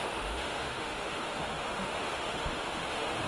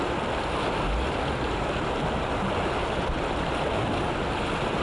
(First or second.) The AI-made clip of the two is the first